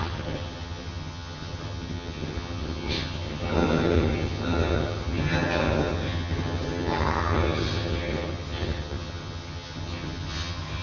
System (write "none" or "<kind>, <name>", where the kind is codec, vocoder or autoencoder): vocoder, HiFi-GAN